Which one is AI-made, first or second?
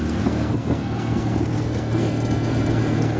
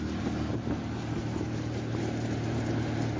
first